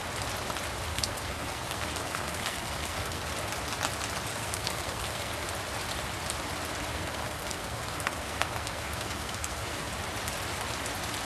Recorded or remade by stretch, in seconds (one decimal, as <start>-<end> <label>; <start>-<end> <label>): 0.0-0.9 recorded; 0.9-3.3 remade; 3.3-4.3 recorded; 4.3-5.5 remade; 5.5-6.9 recorded; 6.9-9.9 remade; 9.9-11.2 recorded